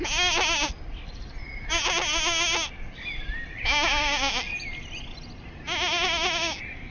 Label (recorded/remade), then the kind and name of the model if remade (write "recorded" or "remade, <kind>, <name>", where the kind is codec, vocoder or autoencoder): recorded